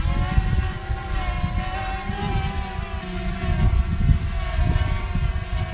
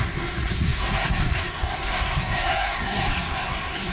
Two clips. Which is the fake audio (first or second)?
second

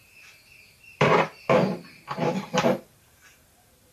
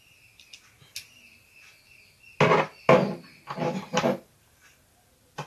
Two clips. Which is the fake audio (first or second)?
first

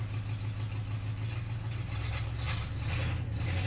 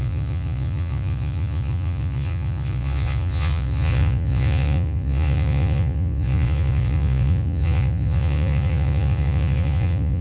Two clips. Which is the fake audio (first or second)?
second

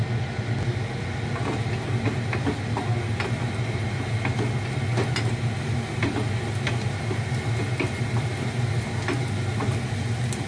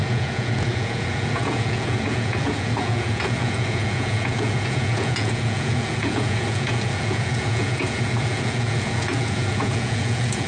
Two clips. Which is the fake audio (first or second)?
second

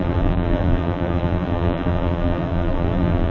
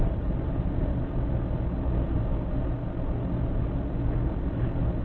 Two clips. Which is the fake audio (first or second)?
first